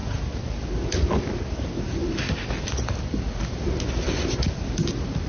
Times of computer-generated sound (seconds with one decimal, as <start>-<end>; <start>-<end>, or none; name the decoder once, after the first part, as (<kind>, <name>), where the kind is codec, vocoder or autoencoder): none

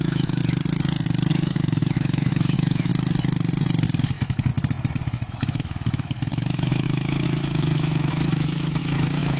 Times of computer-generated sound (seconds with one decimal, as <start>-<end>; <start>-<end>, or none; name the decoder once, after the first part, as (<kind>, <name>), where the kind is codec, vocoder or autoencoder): 0.0-0.4 (autoencoder, DAC-VAE); 1.3-2.9; 4.0-4.5; 5.3-9.4

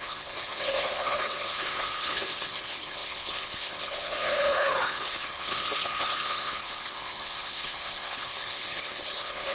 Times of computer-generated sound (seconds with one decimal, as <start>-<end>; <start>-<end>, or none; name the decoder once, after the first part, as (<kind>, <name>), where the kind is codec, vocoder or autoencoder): 0.0-9.5 (codec, HILCodec)

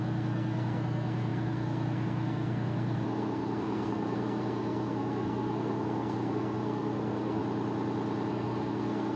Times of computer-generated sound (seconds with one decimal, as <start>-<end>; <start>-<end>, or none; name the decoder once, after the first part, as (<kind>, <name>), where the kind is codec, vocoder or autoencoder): 0.0-7.4 (codec, SNAC); 8.3-9.2

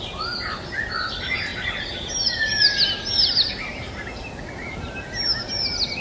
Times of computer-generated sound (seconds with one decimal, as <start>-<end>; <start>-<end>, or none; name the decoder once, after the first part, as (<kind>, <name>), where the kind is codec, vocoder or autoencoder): none